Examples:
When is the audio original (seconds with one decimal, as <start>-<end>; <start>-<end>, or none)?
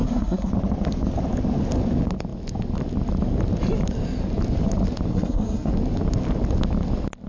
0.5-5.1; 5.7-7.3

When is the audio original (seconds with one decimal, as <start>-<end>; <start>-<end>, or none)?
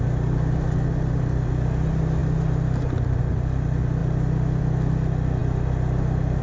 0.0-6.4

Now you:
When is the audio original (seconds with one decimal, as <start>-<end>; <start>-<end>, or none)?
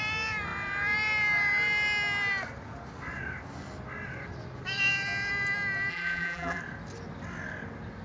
0.0-5.9; 6.6-8.0